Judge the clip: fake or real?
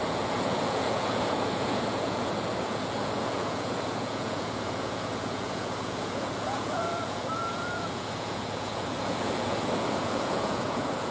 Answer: fake